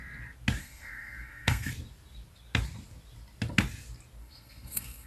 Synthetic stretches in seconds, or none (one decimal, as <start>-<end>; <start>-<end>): 0.6-1.7; 4.2-5.1